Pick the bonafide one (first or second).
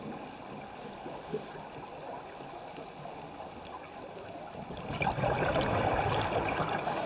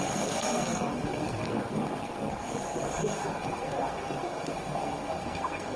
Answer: first